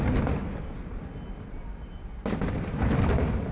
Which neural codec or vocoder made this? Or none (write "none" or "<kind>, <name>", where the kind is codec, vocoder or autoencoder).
none